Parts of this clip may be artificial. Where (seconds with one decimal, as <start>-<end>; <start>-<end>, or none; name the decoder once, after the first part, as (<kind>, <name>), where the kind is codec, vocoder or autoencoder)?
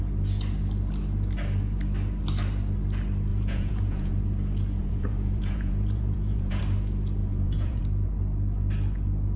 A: 3.3-4.1 (vocoder, Vocos); 4.8-6.6; 7.2-7.8